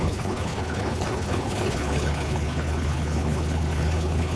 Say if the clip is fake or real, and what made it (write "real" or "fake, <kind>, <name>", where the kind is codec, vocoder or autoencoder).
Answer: fake, codec, HILCodec